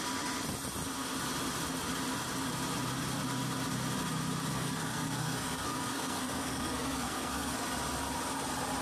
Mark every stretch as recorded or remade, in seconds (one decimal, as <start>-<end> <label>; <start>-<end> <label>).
0.0-4.5 recorded; 4.5-7.5 remade; 7.5-8.8 recorded